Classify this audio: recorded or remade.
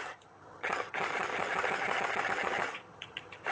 remade